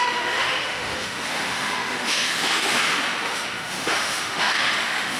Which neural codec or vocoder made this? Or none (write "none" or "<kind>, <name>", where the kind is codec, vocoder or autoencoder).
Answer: autoencoder, DAC-VAE